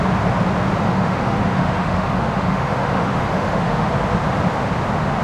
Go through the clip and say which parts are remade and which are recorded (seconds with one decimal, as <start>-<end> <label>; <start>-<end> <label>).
0.0-0.8 recorded; 0.8-3.9 remade; 3.9-5.2 recorded